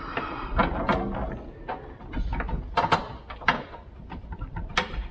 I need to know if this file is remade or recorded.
recorded